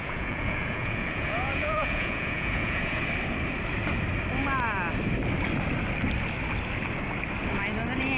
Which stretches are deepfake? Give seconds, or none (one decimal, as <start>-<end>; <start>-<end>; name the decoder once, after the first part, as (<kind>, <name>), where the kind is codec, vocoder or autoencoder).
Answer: 0.0-3.0 (vocoder, Vocos)